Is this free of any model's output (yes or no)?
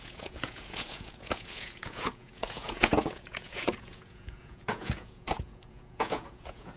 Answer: no